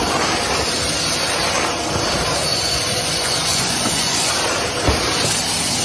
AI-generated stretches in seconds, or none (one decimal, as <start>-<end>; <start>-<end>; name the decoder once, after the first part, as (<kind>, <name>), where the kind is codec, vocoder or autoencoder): 2.5-4.3 (vocoder, Vocos)

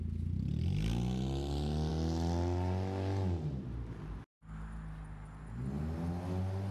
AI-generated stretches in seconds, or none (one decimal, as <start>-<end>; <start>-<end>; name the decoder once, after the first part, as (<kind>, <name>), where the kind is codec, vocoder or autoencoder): none

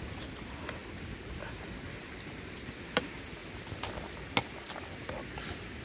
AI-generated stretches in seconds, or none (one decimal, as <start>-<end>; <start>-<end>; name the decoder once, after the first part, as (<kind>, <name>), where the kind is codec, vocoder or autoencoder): none

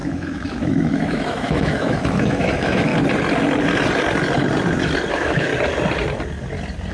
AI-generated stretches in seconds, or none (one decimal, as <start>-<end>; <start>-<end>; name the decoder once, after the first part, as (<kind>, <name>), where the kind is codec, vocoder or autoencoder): 0.0-2.9 (autoencoder, DAC-VAE); 5.1-5.5